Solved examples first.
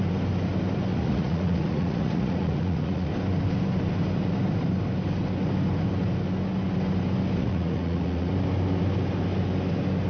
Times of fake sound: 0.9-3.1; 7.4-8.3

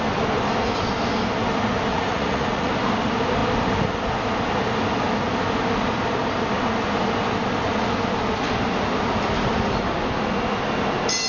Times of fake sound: 1.9-2.7